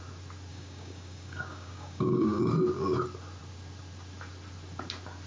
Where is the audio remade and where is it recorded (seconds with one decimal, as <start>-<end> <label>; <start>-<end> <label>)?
0.0-0.5 recorded; 0.5-2.5 remade; 2.5-5.3 recorded